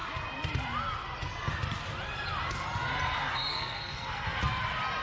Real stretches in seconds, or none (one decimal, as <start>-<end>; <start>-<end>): 0.0-3.5; 4.4-5.0